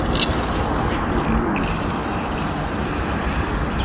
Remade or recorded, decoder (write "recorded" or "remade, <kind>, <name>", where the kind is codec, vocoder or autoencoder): recorded